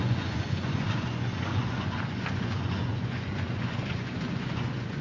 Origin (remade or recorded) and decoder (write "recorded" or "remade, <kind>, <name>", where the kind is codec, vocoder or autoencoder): remade, vocoder, Vocos